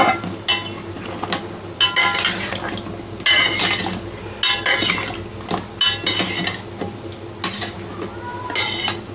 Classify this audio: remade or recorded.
recorded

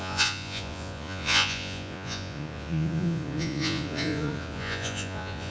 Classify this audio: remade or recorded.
remade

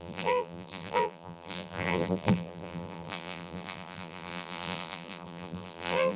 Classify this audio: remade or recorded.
remade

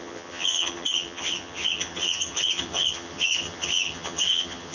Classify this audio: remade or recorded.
remade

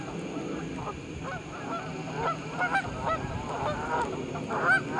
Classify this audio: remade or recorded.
recorded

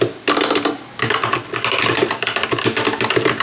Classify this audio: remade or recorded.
recorded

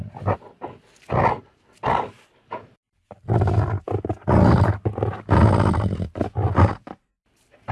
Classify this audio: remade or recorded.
recorded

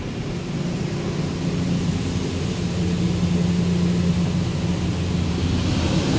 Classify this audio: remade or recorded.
recorded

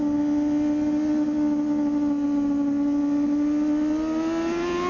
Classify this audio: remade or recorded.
recorded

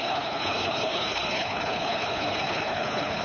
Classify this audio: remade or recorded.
remade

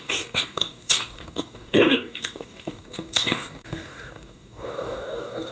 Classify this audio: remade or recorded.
remade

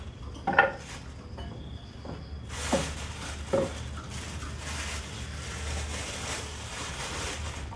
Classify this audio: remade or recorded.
recorded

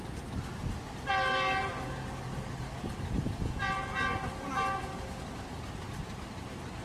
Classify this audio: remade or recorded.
recorded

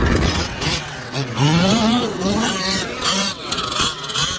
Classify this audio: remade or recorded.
remade